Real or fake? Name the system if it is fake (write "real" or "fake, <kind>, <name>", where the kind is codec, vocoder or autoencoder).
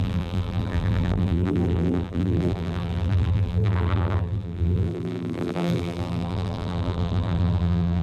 fake, vocoder, BigVGAN v2